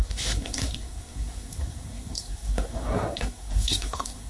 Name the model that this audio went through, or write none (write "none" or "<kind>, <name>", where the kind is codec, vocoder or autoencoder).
codec, SNAC